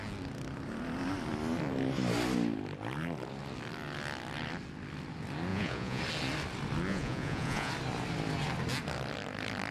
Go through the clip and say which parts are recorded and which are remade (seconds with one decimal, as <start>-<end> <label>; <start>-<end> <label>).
0.0-5.5 recorded; 5.5-6.0 remade; 6.0-6.9 recorded; 6.9-7.7 remade; 7.7-9.7 recorded